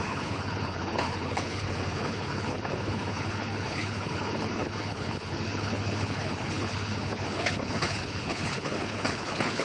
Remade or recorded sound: remade